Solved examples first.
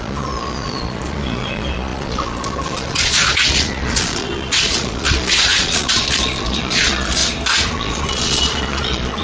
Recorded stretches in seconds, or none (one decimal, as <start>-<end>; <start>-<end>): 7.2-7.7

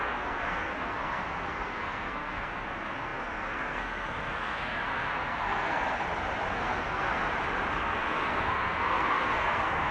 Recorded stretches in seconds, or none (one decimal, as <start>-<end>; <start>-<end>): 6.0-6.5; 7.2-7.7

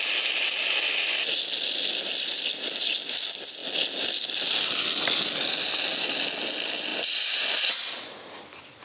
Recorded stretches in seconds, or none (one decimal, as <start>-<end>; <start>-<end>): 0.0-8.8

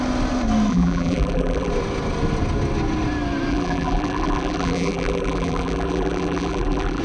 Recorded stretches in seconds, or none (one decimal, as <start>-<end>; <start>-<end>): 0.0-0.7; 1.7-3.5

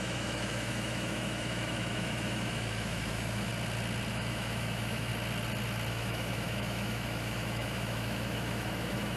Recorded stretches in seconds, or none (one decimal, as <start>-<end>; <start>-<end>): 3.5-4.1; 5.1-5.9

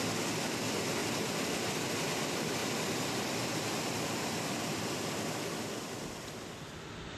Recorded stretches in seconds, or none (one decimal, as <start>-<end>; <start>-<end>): 0.0-7.2

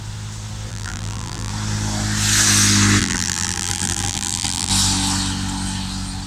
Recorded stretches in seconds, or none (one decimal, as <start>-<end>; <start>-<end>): 0.0-0.7; 1.5-3.0; 4.7-6.3

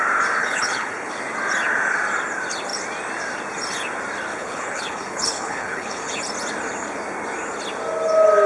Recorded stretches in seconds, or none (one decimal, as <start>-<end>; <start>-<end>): 0.0-0.4; 1.1-4.3; 6.1-8.5